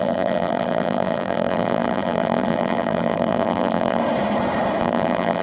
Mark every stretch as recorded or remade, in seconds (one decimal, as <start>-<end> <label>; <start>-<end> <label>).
0.0-4.0 remade; 4.0-4.8 recorded; 4.8-5.4 remade